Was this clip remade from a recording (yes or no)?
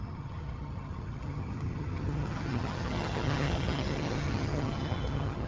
yes